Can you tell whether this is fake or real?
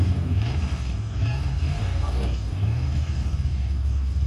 fake